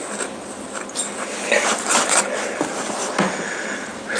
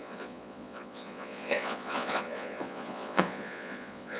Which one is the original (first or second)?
first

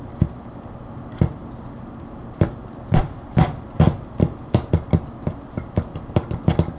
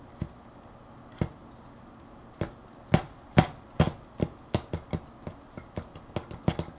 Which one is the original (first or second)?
second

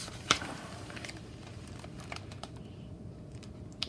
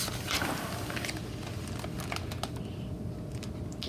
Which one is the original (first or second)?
second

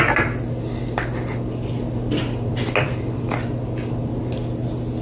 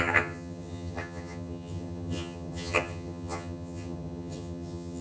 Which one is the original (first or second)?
first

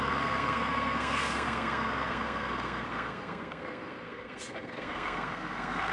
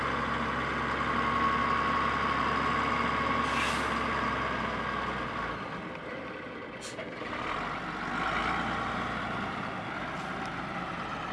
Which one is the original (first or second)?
second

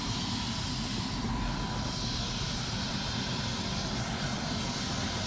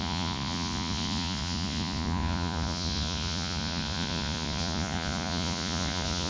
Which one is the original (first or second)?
first